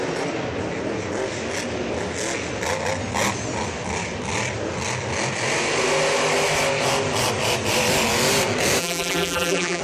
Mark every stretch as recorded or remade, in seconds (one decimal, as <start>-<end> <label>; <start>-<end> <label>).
0.0-8.8 recorded; 8.8-9.8 remade